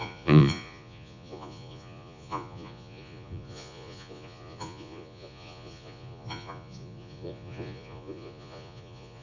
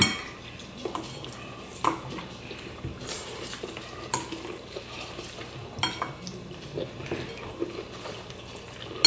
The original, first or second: second